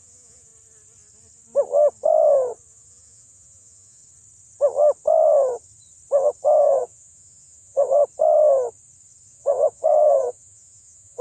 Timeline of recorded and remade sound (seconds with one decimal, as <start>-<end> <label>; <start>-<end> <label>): 0.0-0.5 remade; 0.5-2.7 recorded; 2.7-4.0 remade; 4.0-6.6 recorded; 6.6-8.0 remade; 8.0-9.3 recorded; 9.3-11.2 remade